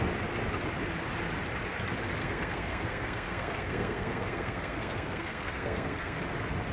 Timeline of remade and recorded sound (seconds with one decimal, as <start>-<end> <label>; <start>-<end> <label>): 0.0-2.2 recorded; 2.2-6.2 remade; 6.2-6.7 recorded